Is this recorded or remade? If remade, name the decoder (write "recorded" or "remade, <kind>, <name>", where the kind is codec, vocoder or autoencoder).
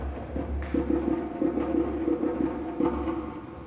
recorded